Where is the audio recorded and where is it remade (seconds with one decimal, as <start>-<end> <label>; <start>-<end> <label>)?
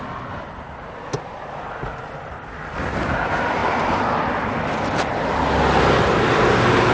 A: 0.0-6.9 recorded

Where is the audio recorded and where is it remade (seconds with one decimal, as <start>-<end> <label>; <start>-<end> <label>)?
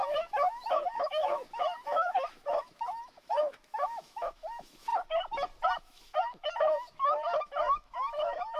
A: 0.0-4.9 remade; 4.9-5.8 recorded; 5.8-8.6 remade